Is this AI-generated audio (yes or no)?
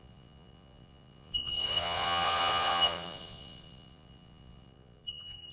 yes